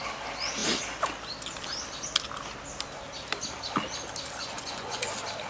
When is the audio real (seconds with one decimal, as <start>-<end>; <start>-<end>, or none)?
0.0-4.4; 5.1-5.5